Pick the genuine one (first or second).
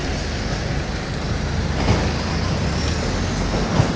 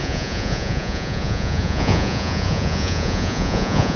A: first